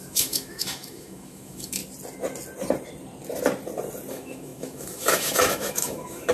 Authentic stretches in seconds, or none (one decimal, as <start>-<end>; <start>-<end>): 1.8-4.1